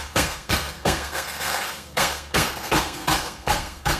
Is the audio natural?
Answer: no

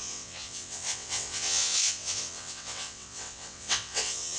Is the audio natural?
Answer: no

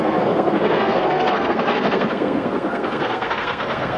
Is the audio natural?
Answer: no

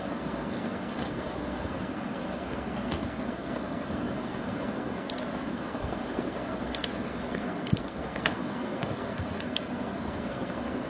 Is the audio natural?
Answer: no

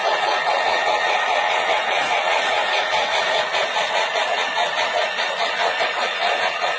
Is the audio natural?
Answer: no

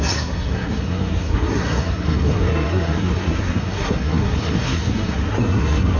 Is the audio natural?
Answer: no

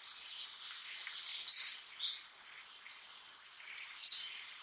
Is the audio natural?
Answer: yes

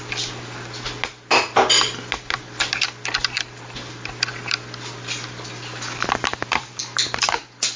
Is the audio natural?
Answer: yes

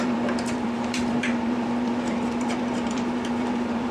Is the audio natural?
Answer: no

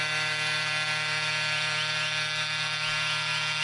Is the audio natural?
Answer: no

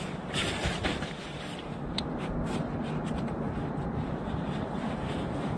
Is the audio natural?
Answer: no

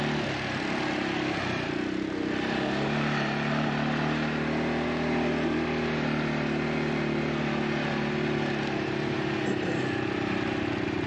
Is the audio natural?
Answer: yes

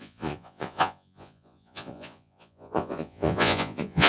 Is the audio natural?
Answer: no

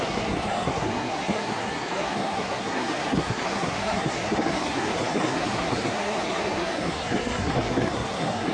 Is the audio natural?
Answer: no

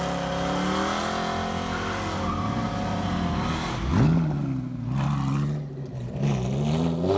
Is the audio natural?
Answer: yes